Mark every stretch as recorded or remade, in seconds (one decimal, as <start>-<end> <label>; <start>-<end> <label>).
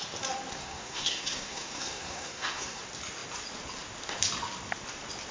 0.0-0.6 recorded; 0.6-2.8 remade; 2.8-5.3 recorded